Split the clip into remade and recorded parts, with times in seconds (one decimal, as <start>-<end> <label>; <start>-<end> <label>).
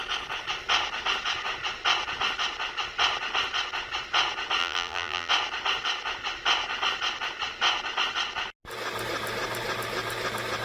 0.0-4.6 recorded; 4.6-5.3 remade; 5.3-10.6 recorded